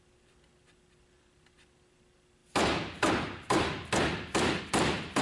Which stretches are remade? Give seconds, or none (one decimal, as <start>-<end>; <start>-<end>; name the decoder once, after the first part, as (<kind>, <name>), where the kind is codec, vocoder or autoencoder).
none